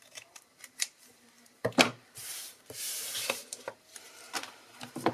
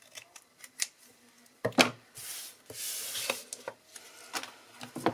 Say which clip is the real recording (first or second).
second